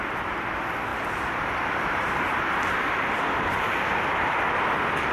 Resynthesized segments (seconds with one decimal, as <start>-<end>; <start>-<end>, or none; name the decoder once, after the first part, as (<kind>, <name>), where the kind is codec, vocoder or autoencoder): 0.9-4.0 (vocoder, BigVGAN v2)